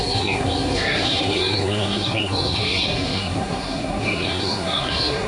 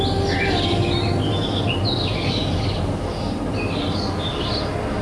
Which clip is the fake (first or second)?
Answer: first